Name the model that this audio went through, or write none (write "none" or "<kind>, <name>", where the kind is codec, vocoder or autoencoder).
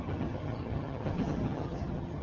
vocoder, HiFi-GAN